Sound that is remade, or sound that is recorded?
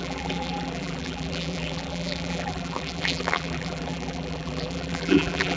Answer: remade